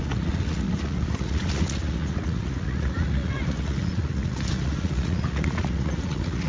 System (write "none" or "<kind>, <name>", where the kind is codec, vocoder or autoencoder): vocoder, Vocos